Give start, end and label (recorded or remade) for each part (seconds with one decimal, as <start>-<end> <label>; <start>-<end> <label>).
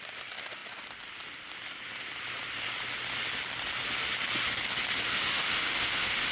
0.0-5.1 recorded; 5.1-6.3 remade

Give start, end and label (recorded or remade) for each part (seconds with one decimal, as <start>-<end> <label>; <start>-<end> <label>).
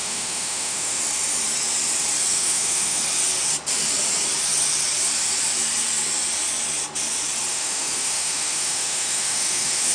0.0-1.0 remade; 1.0-2.3 recorded; 2.3-3.0 remade; 3.0-7.5 recorded; 7.5-9.9 remade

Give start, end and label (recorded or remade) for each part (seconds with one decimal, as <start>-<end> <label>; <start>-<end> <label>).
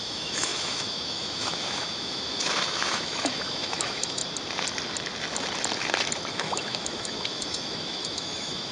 0.0-4.2 remade; 4.2-6.3 recorded; 6.3-8.7 remade